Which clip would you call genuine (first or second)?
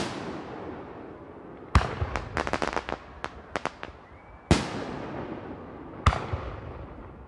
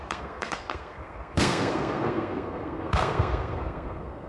first